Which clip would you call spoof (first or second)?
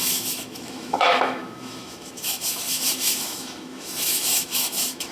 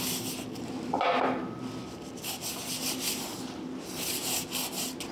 first